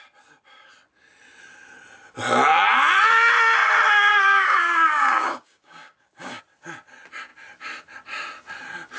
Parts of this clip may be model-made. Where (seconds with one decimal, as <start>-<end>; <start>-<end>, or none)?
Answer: 4.1-6.4